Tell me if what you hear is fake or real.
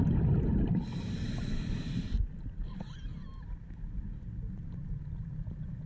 real